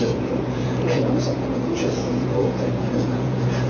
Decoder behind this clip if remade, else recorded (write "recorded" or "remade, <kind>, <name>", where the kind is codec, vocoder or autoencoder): remade, vocoder, Vocos